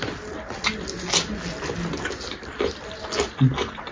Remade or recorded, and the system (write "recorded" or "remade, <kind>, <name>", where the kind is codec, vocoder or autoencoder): recorded